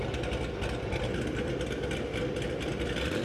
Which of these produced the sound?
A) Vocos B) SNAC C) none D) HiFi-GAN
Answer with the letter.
C